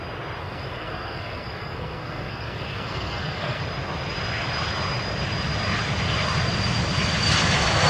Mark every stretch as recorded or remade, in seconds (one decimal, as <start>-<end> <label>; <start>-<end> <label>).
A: 0.0-0.4 recorded; 0.4-3.6 remade; 3.6-7.9 recorded